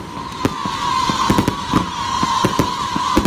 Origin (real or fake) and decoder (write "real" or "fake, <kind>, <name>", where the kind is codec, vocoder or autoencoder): real